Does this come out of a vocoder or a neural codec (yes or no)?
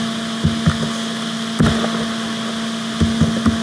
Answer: no